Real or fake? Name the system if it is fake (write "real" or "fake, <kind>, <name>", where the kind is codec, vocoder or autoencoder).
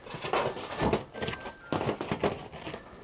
real